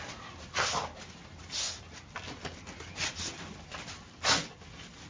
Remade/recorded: recorded